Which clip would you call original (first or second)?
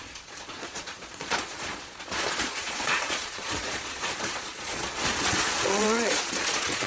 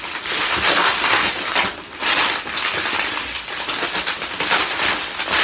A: second